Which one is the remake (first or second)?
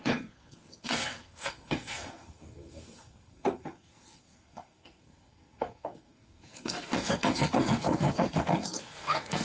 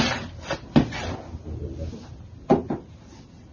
first